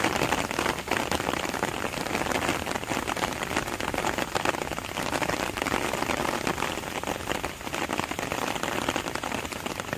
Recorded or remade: recorded